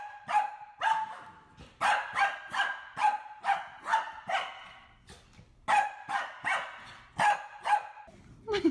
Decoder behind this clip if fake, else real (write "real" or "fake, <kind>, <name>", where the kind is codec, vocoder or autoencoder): real